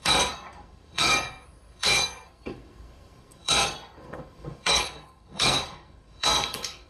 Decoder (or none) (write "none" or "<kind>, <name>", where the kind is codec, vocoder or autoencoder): codec, SNAC